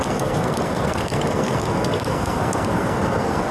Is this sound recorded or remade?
remade